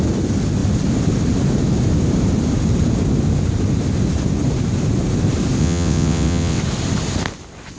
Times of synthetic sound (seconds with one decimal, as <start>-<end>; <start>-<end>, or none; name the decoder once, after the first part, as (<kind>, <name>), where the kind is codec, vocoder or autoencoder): 5.6-6.6 (vocoder, WaveNeXt)